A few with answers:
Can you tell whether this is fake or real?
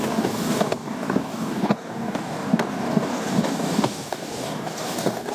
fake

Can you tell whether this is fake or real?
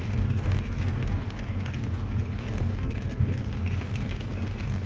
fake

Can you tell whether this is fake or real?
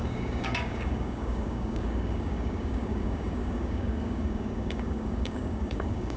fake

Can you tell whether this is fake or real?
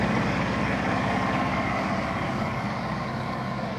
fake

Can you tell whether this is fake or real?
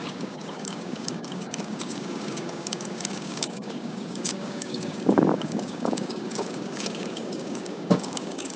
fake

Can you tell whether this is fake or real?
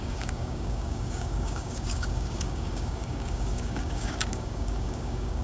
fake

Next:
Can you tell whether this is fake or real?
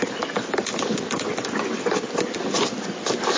real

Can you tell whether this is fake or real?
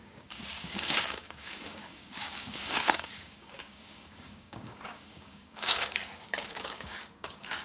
fake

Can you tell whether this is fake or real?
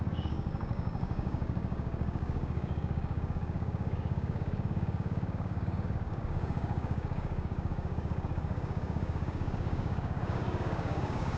fake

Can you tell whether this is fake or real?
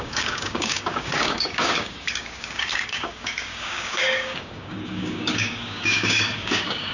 fake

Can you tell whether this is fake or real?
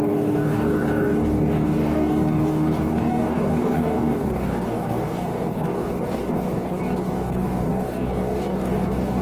fake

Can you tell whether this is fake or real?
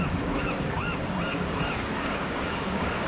fake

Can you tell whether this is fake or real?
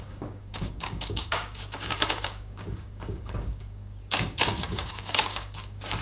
fake